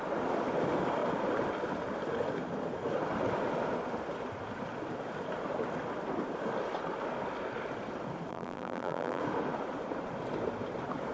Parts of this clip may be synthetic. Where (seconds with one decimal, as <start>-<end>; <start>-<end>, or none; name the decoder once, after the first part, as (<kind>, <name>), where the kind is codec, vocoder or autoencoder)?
8.3-9.2 (vocoder, BigVGAN v2)